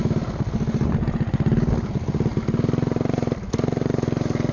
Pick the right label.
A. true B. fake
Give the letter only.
A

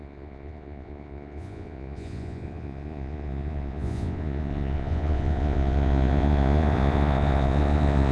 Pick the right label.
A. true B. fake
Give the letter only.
B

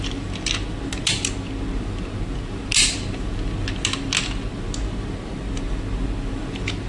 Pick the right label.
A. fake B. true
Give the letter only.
B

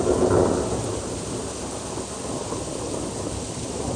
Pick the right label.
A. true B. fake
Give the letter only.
A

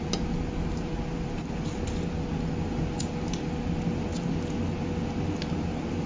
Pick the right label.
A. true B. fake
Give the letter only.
A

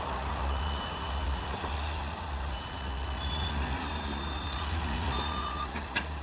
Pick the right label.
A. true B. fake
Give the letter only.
B